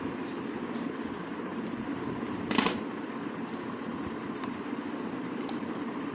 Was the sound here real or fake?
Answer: fake